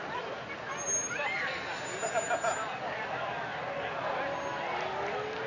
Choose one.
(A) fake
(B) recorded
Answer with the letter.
B